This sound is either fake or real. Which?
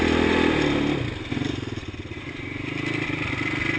real